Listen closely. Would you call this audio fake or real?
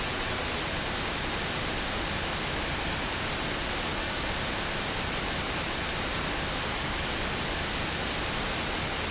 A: real